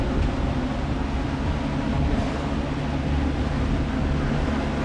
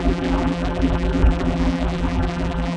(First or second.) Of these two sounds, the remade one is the second